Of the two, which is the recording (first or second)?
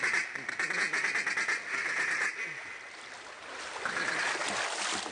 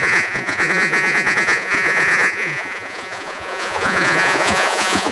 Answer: first